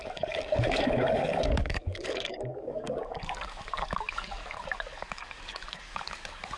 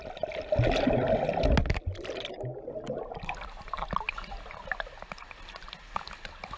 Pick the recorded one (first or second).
second